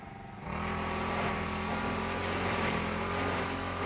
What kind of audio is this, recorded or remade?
recorded